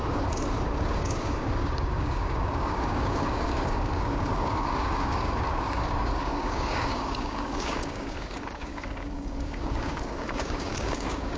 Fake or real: fake